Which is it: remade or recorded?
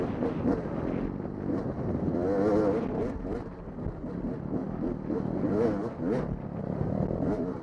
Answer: recorded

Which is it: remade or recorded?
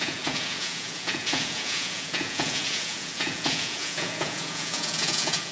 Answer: remade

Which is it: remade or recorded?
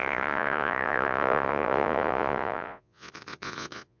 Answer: remade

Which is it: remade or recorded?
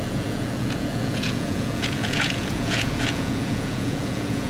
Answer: remade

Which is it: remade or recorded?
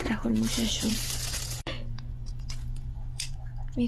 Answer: remade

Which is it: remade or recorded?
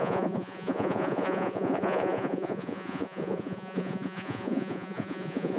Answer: remade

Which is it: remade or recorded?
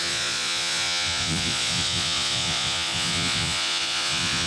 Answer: remade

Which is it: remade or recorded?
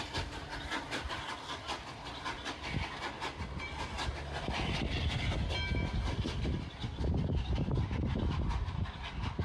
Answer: recorded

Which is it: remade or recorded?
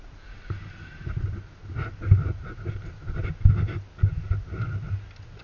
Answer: recorded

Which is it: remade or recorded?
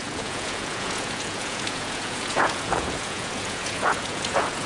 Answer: remade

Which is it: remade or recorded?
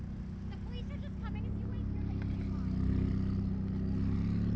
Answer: recorded